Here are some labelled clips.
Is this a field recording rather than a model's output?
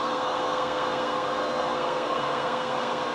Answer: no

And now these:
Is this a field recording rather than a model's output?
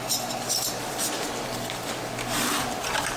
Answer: yes